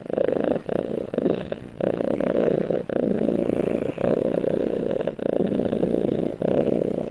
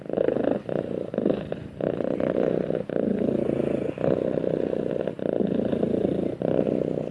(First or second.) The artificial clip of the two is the first